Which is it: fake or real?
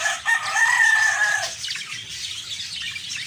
real